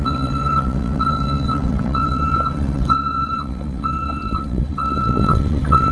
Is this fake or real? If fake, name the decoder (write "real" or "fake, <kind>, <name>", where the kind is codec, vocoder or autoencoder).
fake, vocoder, WaveNeXt